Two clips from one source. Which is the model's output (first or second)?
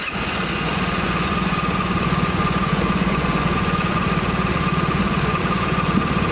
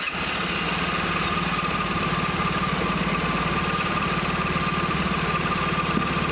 first